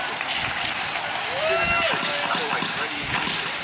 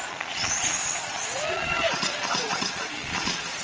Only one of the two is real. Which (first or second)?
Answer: first